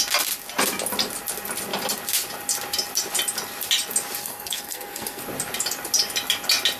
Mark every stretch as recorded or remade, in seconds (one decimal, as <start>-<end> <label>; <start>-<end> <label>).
0.0-4.2 recorded; 4.2-5.2 remade; 5.2-6.8 recorded